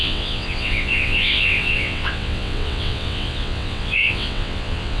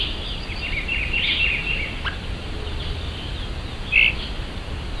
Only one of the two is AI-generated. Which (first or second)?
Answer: first